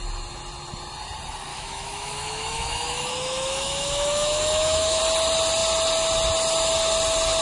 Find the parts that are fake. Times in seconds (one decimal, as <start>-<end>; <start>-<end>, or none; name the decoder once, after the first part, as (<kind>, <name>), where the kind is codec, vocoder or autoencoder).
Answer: 1.5-5.0 (autoencoder, DAC-VAE)